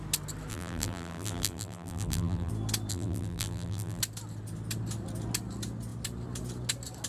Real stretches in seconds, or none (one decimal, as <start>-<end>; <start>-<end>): 0.0-0.5; 2.5-2.9; 4.0-7.1